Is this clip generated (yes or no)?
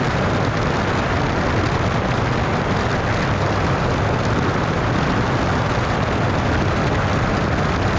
no